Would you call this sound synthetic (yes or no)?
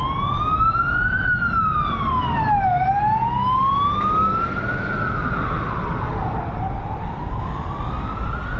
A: no